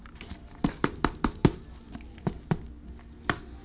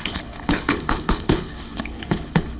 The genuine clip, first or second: first